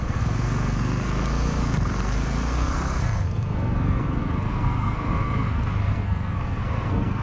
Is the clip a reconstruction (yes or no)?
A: yes